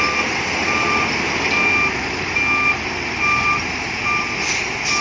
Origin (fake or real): real